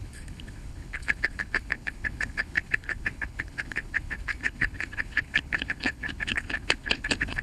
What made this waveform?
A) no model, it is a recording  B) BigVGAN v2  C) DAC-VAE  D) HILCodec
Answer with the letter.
D